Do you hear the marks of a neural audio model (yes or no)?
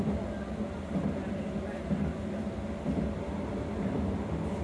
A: no